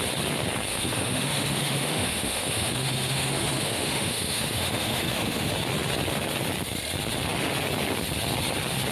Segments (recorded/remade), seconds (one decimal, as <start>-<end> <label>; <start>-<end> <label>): 0.0-0.7 recorded; 0.7-5.5 remade; 5.5-8.9 recorded